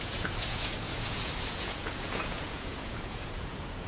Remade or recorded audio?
remade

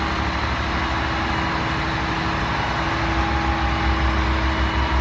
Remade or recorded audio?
recorded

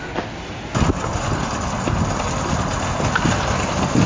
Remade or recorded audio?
recorded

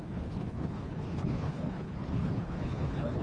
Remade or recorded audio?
remade